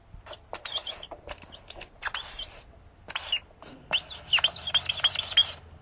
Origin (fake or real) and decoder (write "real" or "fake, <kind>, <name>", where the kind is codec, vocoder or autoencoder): real